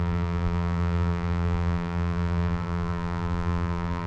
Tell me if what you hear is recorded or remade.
remade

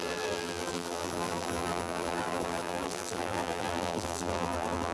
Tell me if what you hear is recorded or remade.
remade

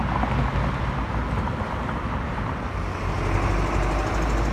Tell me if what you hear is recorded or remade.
recorded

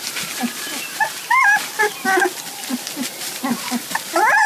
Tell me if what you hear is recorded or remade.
recorded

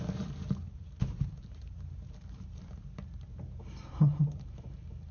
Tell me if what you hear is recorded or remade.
remade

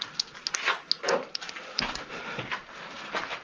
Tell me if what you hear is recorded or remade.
recorded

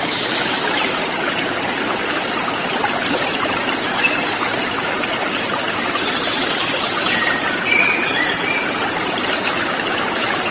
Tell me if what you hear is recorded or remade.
remade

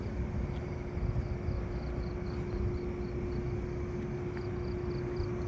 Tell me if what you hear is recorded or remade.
recorded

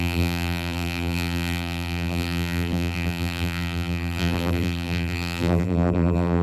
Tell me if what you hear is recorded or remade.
remade